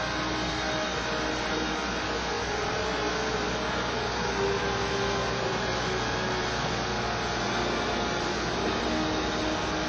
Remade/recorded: recorded